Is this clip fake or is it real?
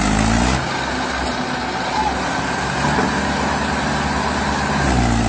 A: real